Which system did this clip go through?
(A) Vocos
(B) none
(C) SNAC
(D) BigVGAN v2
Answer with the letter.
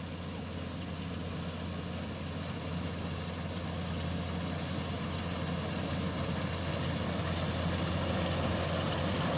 B